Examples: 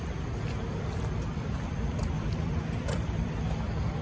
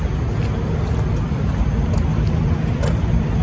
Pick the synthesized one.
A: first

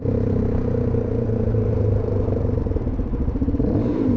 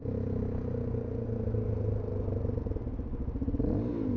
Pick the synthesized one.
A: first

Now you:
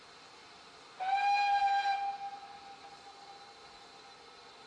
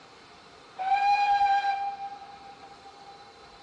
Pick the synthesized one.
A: second